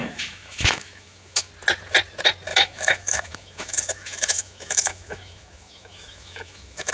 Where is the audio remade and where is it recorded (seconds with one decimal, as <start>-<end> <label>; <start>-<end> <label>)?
0.0-1.5 remade; 1.5-2.5 recorded; 2.5-6.9 remade